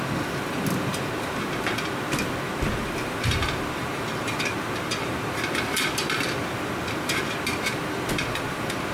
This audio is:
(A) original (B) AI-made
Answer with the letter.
B